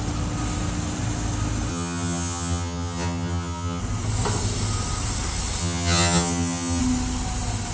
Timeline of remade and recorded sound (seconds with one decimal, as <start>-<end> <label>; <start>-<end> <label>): 0.0-1.7 recorded; 1.7-3.8 remade; 3.8-5.6 recorded; 5.6-6.8 remade; 6.8-7.7 recorded